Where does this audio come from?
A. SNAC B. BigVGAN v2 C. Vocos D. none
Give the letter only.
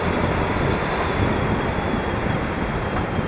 D